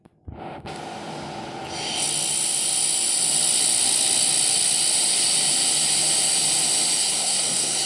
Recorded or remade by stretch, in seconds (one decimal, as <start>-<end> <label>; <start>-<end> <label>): 0.0-7.0 recorded; 7.0-7.9 remade